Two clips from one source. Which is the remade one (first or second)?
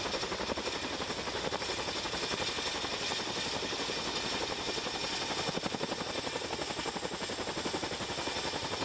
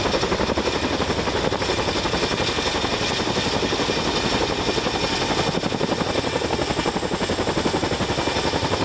first